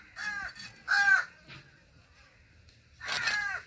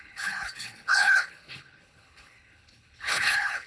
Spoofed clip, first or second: second